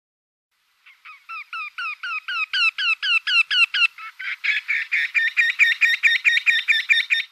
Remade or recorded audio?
recorded